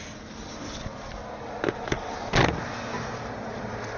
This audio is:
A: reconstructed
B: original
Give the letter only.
B